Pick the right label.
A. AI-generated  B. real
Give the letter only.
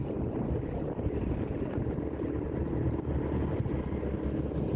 B